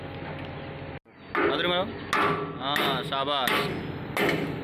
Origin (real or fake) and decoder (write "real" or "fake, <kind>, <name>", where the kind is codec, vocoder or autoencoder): real